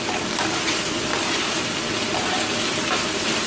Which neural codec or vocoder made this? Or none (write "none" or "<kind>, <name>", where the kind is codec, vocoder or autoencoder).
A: none